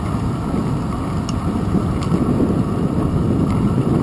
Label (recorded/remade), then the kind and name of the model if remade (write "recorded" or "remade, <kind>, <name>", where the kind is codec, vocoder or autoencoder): recorded